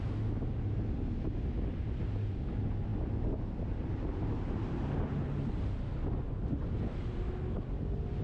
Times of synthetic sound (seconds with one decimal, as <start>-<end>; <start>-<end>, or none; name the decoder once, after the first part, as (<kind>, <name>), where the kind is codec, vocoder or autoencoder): none